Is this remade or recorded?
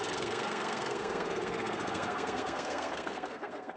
remade